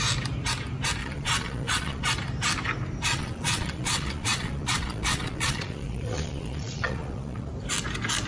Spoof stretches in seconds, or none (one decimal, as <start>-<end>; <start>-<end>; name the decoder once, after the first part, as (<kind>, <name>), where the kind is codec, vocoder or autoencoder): 1.0-2.0 (vocoder, Vocos); 3.1-7.5